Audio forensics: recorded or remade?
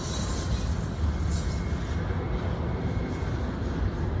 recorded